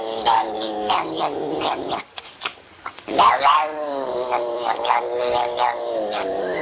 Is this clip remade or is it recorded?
remade